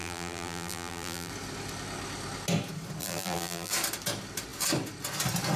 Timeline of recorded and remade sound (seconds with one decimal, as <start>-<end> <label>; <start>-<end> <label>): 0.0-1.3 remade; 1.3-3.0 recorded; 3.0-3.7 remade; 3.7-5.6 recorded